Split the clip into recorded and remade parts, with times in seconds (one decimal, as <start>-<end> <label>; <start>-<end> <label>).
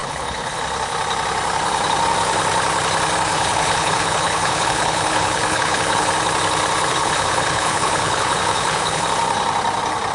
0.0-0.6 remade; 0.6-3.3 recorded; 3.3-6.1 remade; 6.1-6.9 recorded; 6.9-9.0 remade; 9.0-10.1 recorded